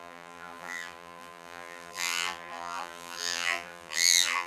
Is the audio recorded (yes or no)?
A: no